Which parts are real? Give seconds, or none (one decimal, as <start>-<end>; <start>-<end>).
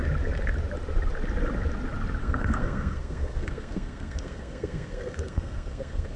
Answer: 0.0-2.2